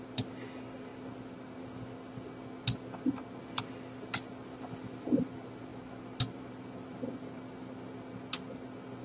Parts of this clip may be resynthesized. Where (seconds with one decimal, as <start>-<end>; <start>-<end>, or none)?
5.7-6.5